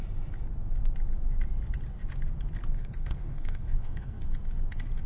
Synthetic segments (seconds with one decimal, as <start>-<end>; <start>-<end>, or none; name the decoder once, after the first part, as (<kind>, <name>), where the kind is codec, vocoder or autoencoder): 2.8-4.2 (codec, SNAC)